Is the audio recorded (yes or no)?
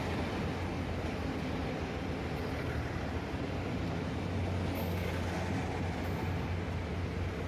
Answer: yes